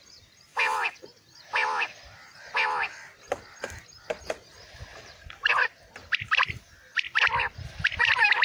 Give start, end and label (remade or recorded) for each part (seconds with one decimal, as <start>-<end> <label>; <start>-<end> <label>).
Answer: 0.0-4.9 recorded; 4.9-5.5 remade; 5.5-6.0 recorded; 6.0-8.0 remade; 8.0-8.4 recorded